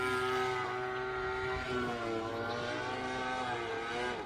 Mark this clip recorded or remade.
recorded